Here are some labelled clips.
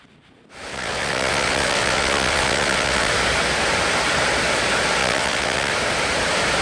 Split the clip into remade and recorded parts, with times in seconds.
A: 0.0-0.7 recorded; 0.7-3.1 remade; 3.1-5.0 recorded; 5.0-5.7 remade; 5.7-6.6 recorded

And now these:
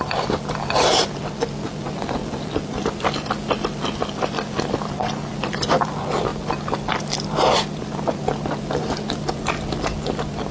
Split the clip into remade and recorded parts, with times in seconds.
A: 0.0-10.5 recorded